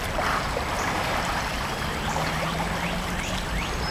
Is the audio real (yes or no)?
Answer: yes